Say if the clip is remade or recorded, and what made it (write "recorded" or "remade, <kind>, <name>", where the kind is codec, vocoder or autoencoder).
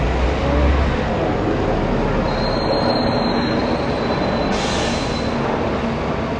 recorded